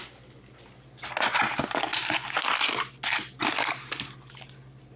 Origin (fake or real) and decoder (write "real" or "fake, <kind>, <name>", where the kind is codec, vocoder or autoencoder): real